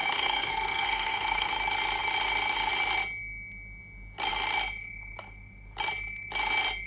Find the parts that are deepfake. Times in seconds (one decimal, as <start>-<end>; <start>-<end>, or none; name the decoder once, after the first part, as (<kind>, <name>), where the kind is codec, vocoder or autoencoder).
0.0-1.5 (codec, SNAC)